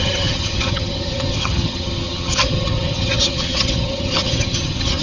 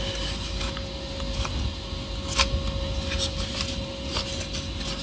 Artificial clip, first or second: first